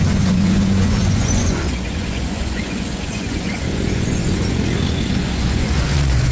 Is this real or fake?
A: fake